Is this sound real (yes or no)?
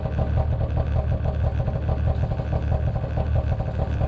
yes